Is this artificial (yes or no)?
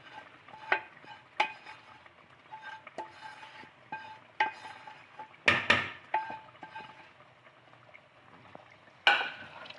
no